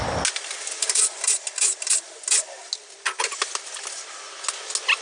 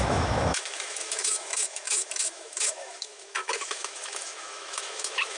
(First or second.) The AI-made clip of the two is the second